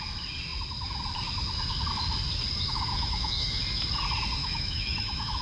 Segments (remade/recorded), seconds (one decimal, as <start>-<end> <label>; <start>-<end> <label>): 0.0-2.7 recorded; 2.7-3.6 remade; 3.6-4.4 recorded; 4.4-5.4 remade